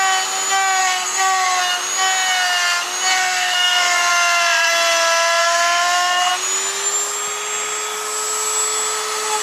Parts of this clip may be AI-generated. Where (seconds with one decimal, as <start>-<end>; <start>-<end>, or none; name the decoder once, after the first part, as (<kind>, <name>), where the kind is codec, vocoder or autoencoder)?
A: 0.8-1.6 (codec, SNAC); 3.1-4.1; 5.4-6.3